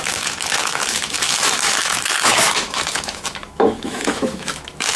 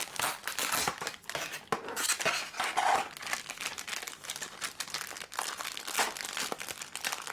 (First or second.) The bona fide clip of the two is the second